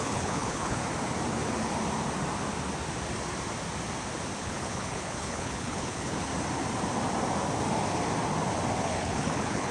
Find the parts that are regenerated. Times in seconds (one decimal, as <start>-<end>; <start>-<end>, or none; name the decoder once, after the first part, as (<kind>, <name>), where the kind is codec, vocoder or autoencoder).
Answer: 0.0-0.8 (codec, HILCodec); 4.4-6.3; 8.8-9.7